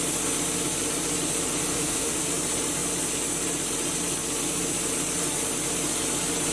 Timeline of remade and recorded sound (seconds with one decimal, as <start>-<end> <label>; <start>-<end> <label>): 0.0-1.7 recorded; 1.7-2.3 remade; 2.3-6.5 recorded